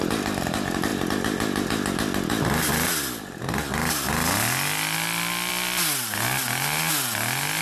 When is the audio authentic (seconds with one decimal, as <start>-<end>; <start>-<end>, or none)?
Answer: 0.0-7.6

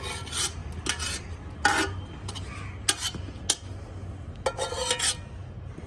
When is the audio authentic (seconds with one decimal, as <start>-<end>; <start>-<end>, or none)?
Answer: 0.0-5.9

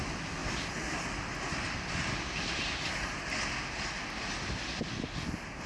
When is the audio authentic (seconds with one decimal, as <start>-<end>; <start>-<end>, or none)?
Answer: 0.0-5.7

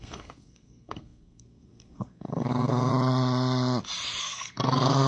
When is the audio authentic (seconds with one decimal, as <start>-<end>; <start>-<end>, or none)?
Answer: 2.9-4.2

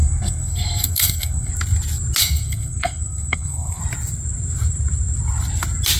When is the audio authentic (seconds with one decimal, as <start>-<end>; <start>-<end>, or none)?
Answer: 1.5-2.2; 3.8-6.0

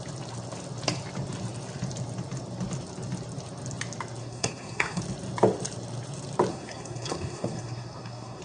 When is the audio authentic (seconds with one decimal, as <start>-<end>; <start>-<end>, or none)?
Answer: 0.0-4.2; 5.0-6.5